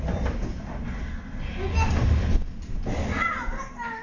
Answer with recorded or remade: recorded